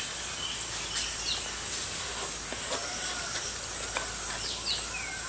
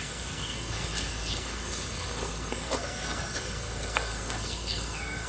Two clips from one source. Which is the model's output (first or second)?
second